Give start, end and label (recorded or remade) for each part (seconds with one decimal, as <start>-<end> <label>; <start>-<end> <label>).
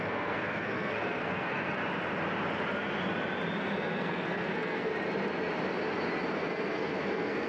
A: 0.0-1.8 remade; 1.8-3.6 recorded; 3.6-4.9 remade; 4.9-6.3 recorded; 6.3-7.5 remade